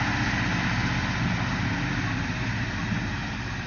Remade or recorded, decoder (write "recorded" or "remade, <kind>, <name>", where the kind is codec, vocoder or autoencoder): recorded